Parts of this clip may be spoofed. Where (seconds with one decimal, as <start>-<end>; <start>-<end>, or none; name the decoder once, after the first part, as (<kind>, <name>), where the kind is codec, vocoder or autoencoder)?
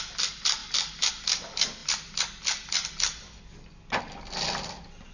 none